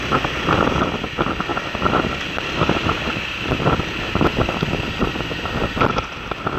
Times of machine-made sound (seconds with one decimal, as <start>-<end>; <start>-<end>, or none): none